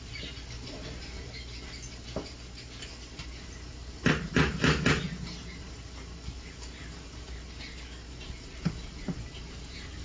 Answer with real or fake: real